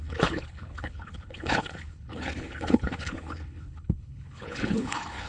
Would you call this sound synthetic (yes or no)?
yes